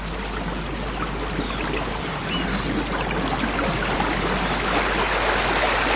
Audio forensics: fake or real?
real